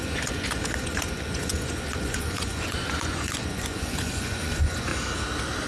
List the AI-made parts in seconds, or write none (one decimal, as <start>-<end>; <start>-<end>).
0.0-4.9